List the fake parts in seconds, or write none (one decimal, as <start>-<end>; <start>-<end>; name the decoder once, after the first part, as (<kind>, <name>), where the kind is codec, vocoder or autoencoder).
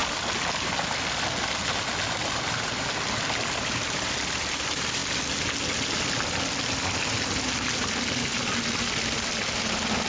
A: none